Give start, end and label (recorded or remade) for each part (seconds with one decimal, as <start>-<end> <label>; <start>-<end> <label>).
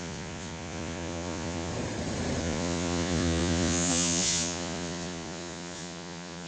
0.0-1.7 remade; 1.7-2.4 recorded; 2.4-6.5 remade